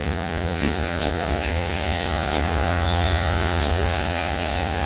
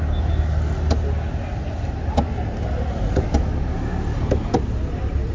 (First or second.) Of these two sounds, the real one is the second